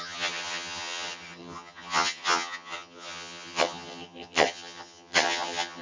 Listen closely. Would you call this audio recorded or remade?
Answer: remade